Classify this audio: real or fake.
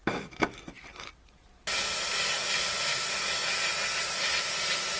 real